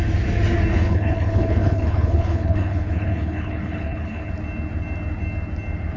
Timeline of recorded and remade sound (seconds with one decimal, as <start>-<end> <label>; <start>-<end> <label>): 0.0-0.7 recorded; 0.7-4.3 remade; 4.3-6.0 recorded